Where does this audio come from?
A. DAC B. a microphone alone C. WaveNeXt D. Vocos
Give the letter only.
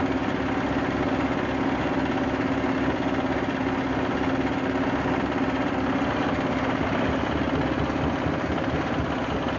B